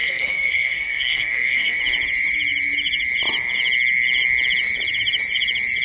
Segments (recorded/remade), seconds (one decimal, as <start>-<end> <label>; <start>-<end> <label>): 0.0-1.8 remade; 1.8-5.8 recorded